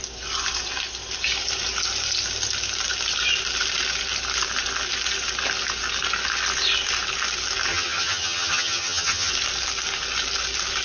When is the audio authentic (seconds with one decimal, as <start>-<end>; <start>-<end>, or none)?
0.0-7.7; 9.3-10.8